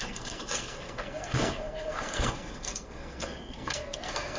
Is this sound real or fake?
fake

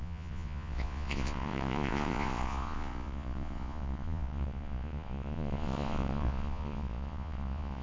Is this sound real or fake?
fake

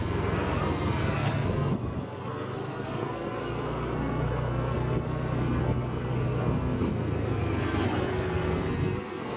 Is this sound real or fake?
fake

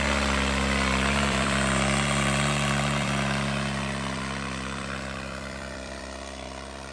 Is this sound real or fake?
fake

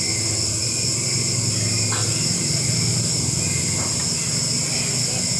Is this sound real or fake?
real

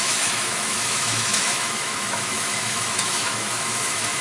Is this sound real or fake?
fake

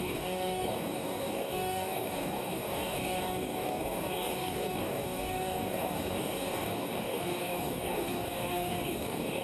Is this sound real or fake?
fake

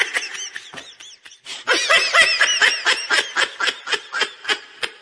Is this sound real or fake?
real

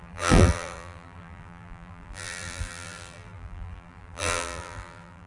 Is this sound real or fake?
fake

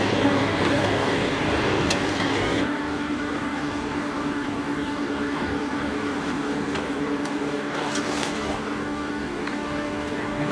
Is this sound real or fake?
fake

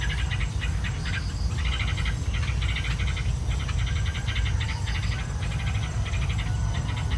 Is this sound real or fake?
real